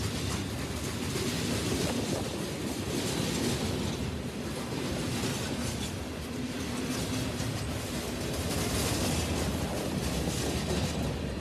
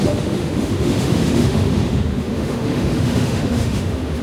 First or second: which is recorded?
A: first